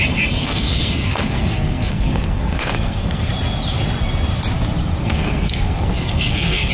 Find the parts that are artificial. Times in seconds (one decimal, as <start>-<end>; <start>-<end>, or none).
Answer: 0.4-3.3; 5.0-6.7